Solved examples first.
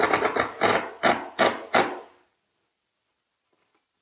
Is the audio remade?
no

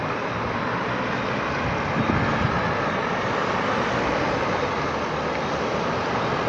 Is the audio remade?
no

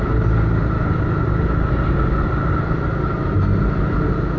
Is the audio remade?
no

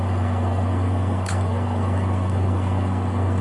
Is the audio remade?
yes